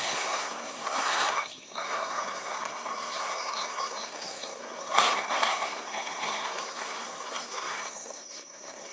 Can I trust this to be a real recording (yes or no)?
no